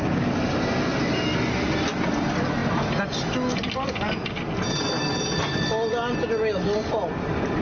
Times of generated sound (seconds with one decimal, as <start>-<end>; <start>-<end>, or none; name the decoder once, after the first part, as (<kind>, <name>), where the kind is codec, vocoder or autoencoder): none